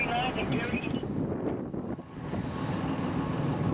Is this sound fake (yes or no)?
no